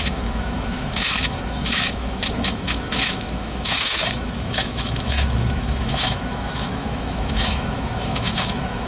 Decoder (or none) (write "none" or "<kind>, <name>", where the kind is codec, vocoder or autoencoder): autoencoder, DAC-VAE